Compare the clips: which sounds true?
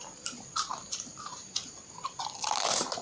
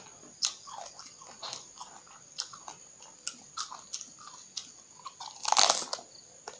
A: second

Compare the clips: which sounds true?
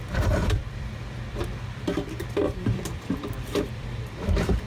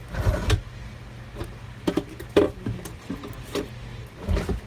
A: second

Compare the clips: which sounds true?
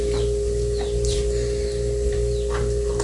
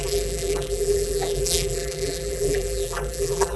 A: first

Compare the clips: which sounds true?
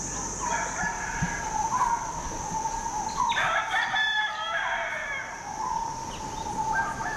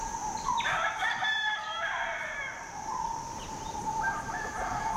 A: first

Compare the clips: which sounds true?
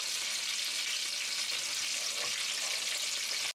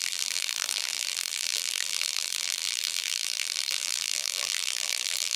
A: first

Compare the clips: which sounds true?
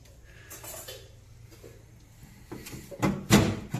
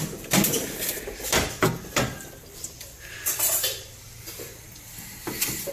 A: first